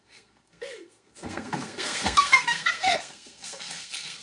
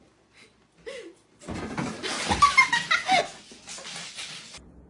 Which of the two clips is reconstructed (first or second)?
first